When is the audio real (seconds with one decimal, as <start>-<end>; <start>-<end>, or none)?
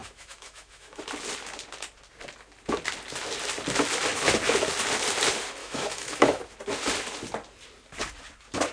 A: 1.0-5.6; 6.4-8.7